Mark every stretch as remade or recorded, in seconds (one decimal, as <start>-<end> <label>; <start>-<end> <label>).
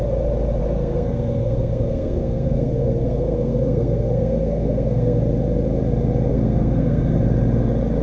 0.0-0.6 recorded; 0.6-5.2 remade; 5.2-6.3 recorded; 6.3-7.2 remade; 7.2-8.0 recorded